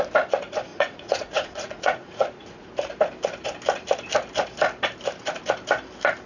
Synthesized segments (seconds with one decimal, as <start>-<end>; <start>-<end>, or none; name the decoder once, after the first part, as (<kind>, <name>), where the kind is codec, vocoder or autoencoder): 0.7-2.7 (vocoder, Vocos)